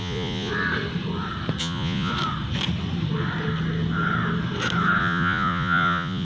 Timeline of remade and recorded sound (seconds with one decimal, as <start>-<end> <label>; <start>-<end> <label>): 0.0-0.5 remade; 0.5-1.6 recorded; 1.6-2.1 remade; 2.1-5.0 recorded; 5.0-6.2 remade